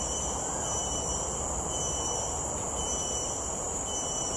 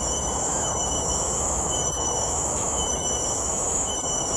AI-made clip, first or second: second